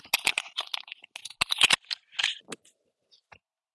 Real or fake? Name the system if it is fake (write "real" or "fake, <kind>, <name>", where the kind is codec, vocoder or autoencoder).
real